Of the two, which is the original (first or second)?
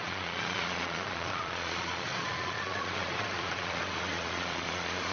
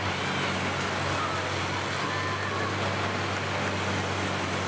second